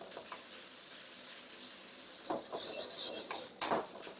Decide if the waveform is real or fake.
real